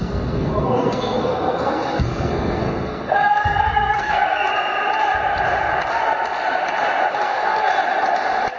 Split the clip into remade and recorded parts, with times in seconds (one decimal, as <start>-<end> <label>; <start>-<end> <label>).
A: 0.0-4.5 remade; 4.5-7.1 recorded; 7.1-7.7 remade; 7.7-8.6 recorded